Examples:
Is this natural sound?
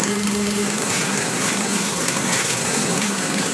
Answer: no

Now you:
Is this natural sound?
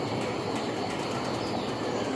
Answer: yes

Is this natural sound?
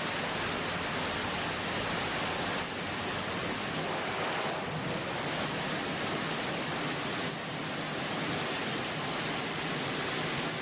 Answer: yes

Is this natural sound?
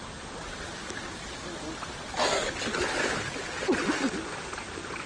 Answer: yes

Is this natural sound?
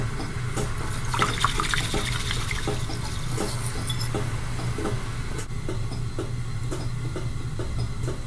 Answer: yes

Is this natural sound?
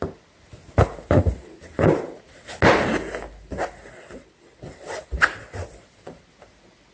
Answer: yes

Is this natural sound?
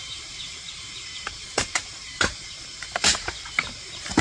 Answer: no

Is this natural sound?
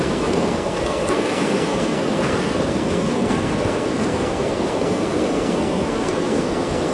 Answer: no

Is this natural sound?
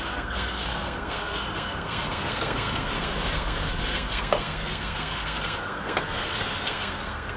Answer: no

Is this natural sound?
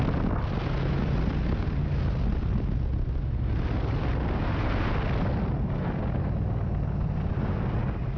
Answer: yes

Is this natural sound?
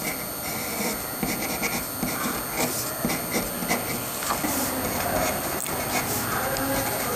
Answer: yes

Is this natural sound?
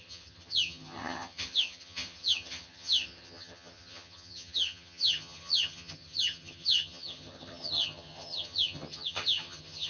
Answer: no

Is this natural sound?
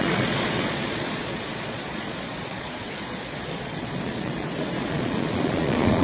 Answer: no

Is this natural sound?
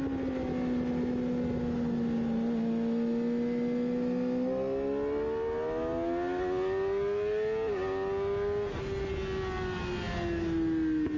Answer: yes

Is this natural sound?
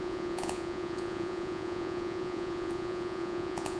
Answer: no